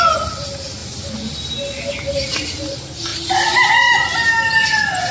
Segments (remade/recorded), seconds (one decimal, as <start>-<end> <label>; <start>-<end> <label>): 0.0-5.1 recorded